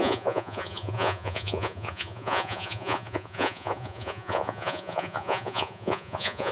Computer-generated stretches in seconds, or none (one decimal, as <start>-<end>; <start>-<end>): 0.0-6.5